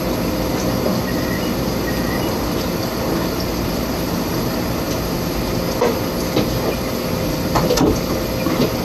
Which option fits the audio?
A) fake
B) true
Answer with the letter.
B